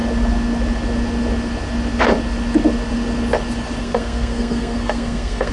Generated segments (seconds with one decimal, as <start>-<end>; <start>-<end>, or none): 3.8-5.5